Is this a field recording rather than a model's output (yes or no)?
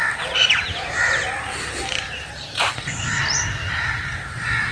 no